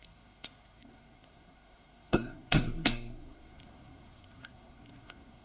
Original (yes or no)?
no